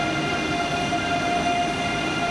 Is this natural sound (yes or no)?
yes